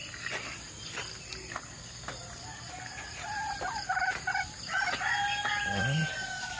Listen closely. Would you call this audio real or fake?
real